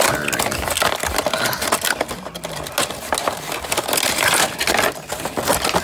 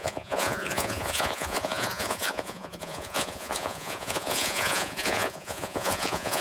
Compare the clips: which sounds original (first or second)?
first